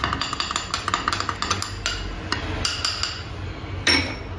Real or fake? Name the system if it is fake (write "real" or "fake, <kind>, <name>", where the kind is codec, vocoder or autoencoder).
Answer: real